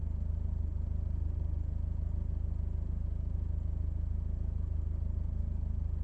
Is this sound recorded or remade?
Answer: recorded